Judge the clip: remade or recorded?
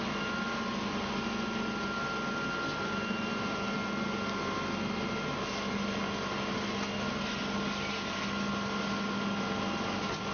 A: recorded